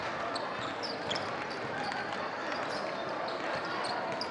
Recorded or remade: recorded